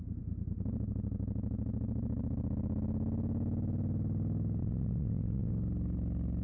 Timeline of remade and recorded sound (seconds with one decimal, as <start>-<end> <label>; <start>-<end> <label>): 0.0-4.6 recorded; 4.6-5.5 remade; 5.5-6.4 recorded